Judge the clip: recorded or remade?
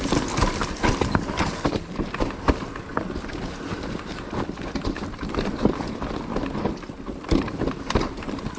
recorded